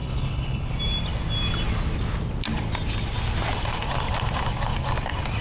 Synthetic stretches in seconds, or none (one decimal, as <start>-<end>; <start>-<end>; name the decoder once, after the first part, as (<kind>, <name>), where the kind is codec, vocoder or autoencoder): 0.0-0.7 (codec, HILCodec)